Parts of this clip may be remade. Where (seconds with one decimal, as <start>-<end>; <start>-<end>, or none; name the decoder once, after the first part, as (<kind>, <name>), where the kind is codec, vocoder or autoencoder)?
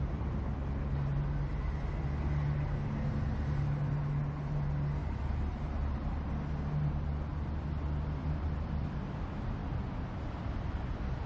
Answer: 5.0-6.3 (vocoder, BigVGAN v2); 8.2-9.0